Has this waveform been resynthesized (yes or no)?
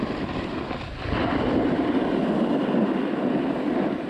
no